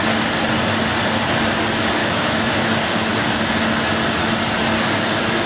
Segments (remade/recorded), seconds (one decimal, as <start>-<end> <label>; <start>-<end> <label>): 0.0-2.0 recorded; 2.0-2.5 remade; 2.5-5.5 recorded